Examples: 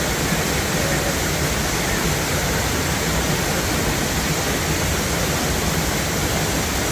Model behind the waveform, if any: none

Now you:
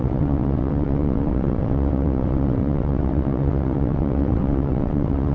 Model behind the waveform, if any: vocoder, WaveNeXt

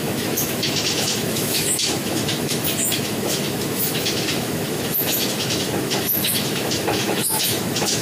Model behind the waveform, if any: autoencoder, DAC-VAE